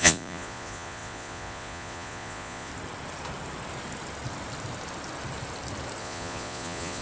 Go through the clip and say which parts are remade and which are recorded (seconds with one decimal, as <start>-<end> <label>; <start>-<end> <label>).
0.0-2.7 remade; 2.7-6.0 recorded; 6.0-7.0 remade